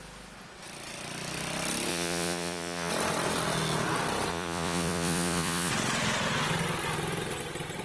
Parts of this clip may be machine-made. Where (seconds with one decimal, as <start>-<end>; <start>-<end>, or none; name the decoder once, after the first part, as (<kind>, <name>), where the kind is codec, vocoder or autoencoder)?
1.9-2.9 (vocoder, Vocos); 4.3-5.7